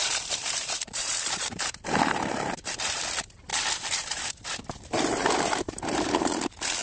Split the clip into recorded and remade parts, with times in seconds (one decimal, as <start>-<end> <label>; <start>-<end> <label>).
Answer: 0.0-3.0 remade; 3.0-3.5 recorded; 3.5-6.8 remade